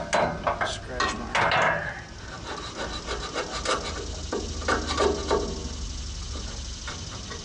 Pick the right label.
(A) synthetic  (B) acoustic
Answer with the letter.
B